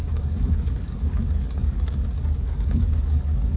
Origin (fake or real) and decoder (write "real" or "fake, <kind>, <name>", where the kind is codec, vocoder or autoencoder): fake, codec, DAC